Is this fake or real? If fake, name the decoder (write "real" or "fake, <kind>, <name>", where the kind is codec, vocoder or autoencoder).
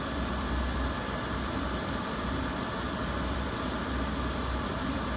fake, vocoder, BigVGAN v2